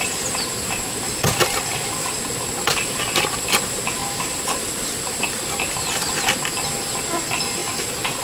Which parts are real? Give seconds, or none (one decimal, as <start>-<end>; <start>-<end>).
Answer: 0.0-8.2

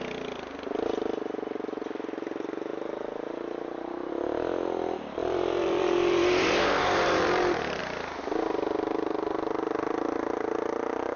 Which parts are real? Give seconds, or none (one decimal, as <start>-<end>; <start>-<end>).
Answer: 0.0-2.7; 4.1-5.2; 7.8-11.2

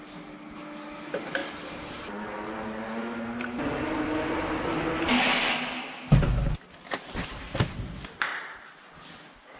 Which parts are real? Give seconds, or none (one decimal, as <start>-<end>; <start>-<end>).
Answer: 0.0-9.6

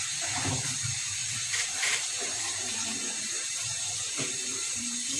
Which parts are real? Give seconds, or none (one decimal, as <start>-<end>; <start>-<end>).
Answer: none

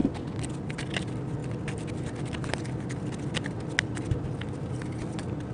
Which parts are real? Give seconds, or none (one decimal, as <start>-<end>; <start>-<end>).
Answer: 0.9-5.5